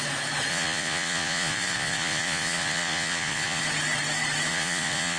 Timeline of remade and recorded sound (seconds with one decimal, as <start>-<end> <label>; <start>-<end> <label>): 0.0-0.5 recorded; 0.5-3.6 remade; 3.6-4.5 recorded; 4.5-5.2 remade